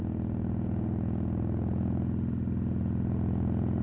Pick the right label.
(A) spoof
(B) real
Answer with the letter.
B